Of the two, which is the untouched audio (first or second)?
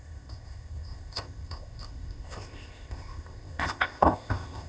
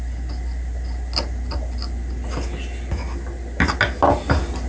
second